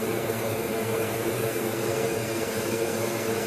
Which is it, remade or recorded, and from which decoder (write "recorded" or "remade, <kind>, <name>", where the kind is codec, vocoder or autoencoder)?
remade, codec, SNAC